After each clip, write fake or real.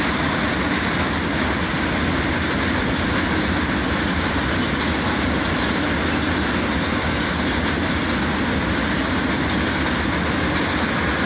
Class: real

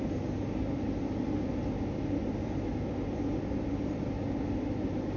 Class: real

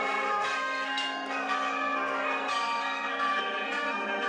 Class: fake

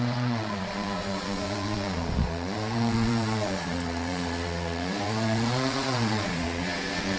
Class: fake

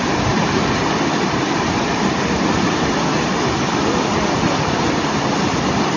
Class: fake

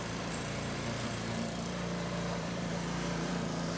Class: fake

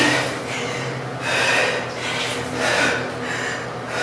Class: real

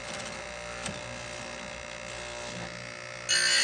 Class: real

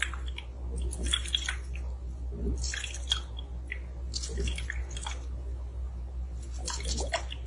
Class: real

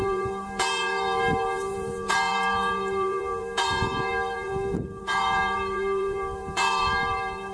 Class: fake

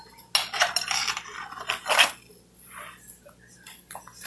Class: real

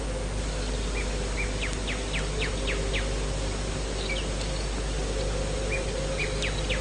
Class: real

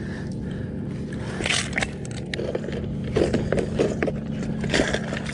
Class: real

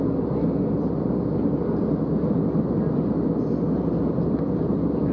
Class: real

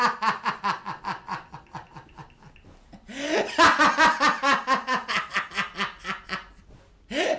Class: real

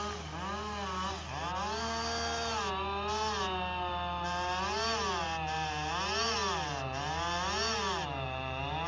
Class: real